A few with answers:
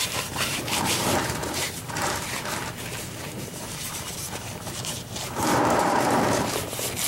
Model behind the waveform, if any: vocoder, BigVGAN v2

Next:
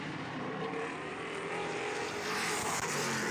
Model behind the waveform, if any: vocoder, BigVGAN v2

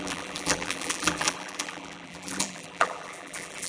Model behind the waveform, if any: vocoder, BigVGAN v2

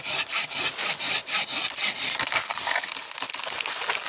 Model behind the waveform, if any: none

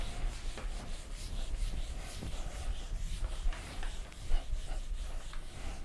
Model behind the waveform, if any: none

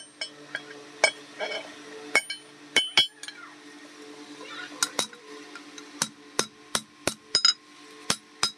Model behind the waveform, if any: none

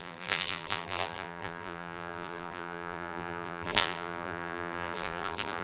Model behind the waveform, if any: vocoder, BigVGAN v2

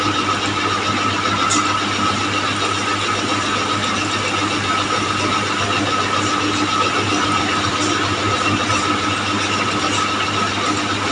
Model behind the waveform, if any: none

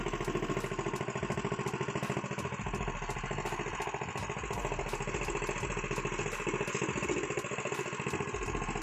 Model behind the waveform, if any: none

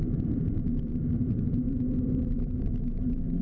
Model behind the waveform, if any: vocoder, BigVGAN v2